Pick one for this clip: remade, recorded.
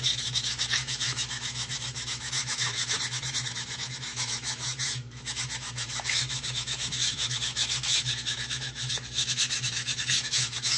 remade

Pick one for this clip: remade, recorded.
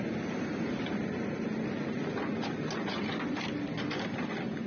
recorded